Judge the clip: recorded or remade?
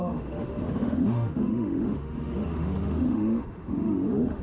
remade